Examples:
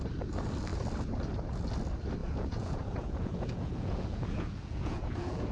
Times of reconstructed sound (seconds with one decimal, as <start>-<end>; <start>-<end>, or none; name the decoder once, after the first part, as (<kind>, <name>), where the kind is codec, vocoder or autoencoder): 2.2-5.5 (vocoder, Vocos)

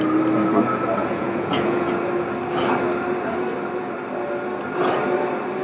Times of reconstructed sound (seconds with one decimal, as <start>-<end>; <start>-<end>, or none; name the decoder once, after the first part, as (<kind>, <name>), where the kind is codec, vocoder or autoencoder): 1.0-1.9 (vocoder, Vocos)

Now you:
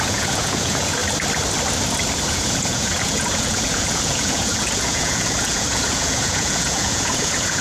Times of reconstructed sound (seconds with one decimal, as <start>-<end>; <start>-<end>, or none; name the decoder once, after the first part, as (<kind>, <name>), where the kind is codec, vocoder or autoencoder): 0.0-1.0 (vocoder, Vocos); 2.3-7.6

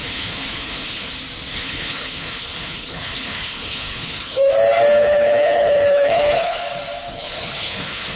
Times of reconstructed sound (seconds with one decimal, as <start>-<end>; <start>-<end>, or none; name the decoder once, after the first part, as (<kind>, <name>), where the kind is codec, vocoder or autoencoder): 0.0-1.1 (codec, HILCodec); 1.5-4.5; 5.0-6.6; 7.1-8.2